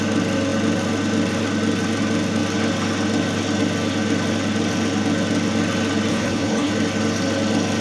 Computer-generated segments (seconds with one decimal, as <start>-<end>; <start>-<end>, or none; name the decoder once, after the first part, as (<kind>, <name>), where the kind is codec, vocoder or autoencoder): 6.1-6.7 (codec, HILCodec)